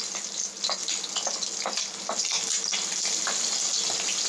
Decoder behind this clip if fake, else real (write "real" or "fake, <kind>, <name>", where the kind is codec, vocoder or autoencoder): real